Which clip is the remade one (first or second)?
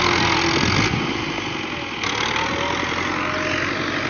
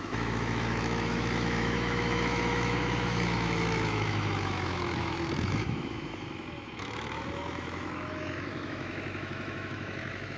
second